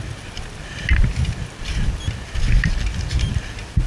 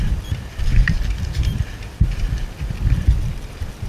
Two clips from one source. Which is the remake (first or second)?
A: second